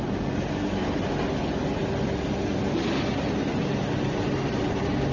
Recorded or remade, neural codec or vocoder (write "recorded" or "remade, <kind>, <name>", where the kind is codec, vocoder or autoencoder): recorded